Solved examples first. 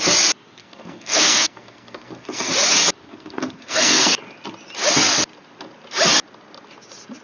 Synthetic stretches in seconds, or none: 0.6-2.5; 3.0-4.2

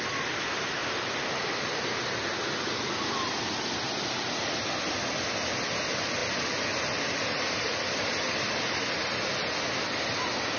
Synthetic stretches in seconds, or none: none